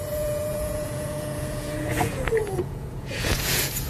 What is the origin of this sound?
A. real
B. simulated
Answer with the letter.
B